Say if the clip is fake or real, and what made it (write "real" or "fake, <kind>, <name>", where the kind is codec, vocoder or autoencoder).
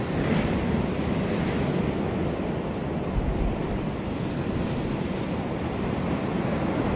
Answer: real